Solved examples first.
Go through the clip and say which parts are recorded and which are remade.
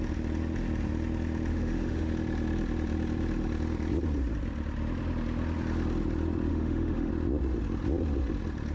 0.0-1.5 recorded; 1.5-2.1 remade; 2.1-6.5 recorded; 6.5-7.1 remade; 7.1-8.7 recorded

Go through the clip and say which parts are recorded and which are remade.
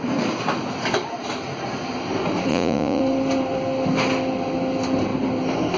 0.0-2.5 recorded; 2.5-3.0 remade; 3.0-5.8 recorded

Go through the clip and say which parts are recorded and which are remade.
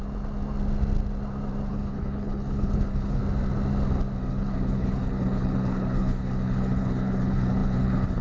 0.0-1.7 recorded; 1.7-3.2 remade; 3.2-4.3 recorded; 4.3-8.2 remade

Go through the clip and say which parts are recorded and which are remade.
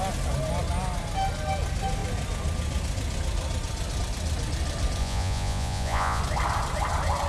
0.0-5.0 recorded; 5.0-6.2 remade; 6.2-7.3 recorded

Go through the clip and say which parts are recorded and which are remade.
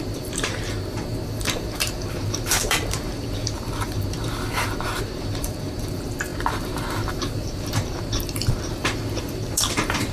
0.0-10.1 remade